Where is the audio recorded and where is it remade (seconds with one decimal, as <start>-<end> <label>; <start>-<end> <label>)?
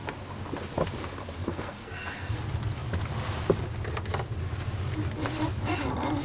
0.0-1.5 recorded; 1.5-2.4 remade; 2.4-6.2 recorded